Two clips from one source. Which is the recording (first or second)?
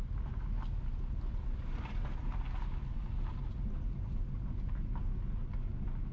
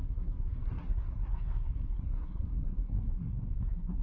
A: first